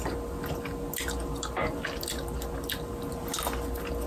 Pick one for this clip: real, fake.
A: real